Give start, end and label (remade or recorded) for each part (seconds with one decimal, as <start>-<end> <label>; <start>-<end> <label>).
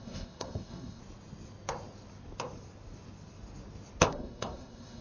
0.0-1.0 remade; 1.0-4.0 recorded; 4.0-5.0 remade